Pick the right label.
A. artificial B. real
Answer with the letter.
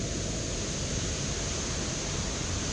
B